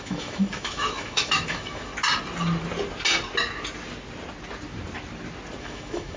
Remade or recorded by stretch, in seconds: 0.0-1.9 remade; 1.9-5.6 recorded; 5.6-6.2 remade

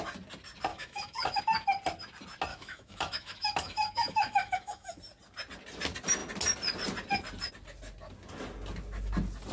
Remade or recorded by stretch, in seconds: 0.0-0.7 recorded; 0.7-1.4 remade; 1.4-2.5 recorded; 2.5-5.0 remade; 5.0-9.5 recorded

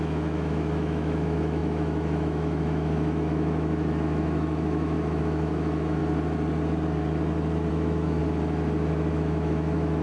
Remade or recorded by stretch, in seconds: 0.0-6.0 remade; 6.0-7.7 recorded; 7.7-8.2 remade; 8.2-9.1 recorded; 9.1-10.0 remade

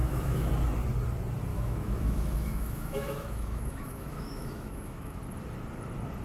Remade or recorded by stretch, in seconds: 0.0-0.5 remade; 0.5-1.5 recorded; 1.5-5.2 remade; 5.2-6.2 recorded